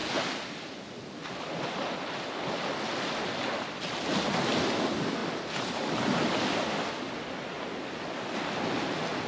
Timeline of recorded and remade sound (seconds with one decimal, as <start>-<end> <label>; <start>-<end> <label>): 0.0-9.3 recorded